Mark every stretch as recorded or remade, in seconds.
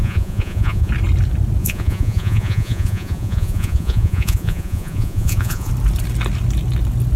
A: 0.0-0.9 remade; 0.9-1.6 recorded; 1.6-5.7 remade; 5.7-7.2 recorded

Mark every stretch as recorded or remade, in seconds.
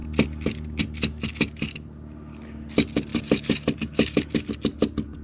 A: 0.0-3.1 recorded; 3.1-4.5 remade; 4.5-5.2 recorded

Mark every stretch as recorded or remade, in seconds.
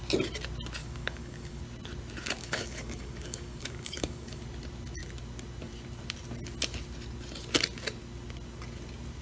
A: 0.0-0.8 recorded; 0.8-1.6 remade; 1.6-2.4 recorded; 2.4-4.4 remade; 4.4-9.2 recorded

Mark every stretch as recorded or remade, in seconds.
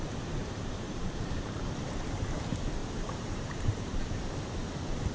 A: 0.0-0.4 recorded; 0.4-1.6 remade; 1.6-2.8 recorded; 2.8-4.2 remade; 4.2-5.1 recorded